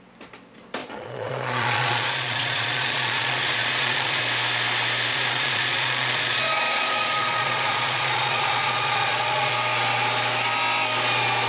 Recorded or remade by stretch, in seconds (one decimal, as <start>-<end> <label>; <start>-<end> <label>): 0.0-0.8 recorded; 0.8-4.2 remade; 4.2-5.1 recorded; 5.1-9.5 remade; 9.5-11.5 recorded